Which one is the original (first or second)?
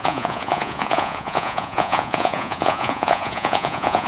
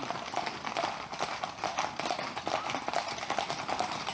second